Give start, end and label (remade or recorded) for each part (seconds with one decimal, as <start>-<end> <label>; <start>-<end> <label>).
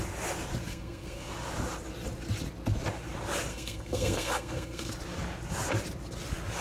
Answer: 0.0-0.7 recorded; 0.7-1.3 remade; 1.3-3.5 recorded; 3.5-4.9 remade; 4.9-6.6 recorded